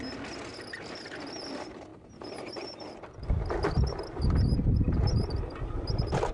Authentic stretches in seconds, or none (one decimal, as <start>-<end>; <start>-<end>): 0.0-6.3